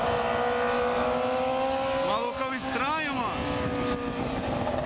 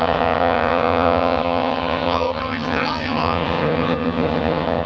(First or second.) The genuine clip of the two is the first